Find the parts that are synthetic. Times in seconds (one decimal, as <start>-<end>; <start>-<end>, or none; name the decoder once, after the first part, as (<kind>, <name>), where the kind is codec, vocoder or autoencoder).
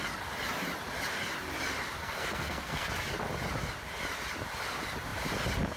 2.0-2.9 (codec, SNAC)